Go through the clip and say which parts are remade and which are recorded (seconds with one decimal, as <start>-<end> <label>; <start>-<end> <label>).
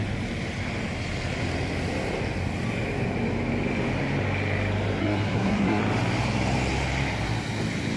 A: 0.0-5.0 recorded; 5.0-5.8 remade; 5.8-8.0 recorded